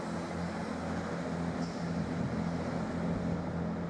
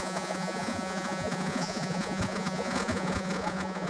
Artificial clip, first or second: second